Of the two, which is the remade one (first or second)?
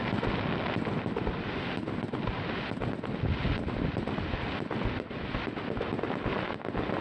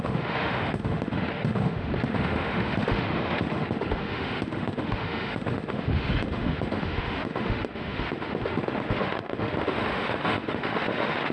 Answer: second